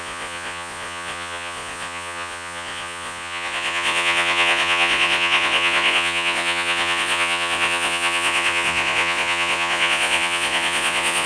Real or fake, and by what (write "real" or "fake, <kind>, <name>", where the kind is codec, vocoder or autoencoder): fake, vocoder, Vocos